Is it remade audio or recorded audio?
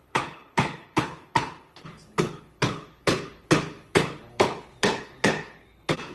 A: remade